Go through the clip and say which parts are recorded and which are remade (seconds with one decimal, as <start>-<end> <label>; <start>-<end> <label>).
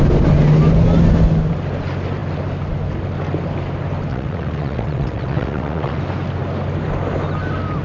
0.0-4.1 recorded; 4.1-6.0 remade; 6.0-7.8 recorded